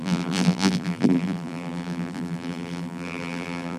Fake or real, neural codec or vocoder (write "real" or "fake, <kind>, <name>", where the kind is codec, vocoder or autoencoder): fake, vocoder, BigVGAN v2